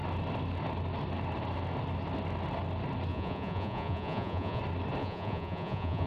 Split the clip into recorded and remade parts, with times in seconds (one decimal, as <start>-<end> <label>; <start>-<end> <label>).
0.0-3.1 recorded; 3.1-4.6 remade; 4.6-5.0 recorded; 5.0-6.1 remade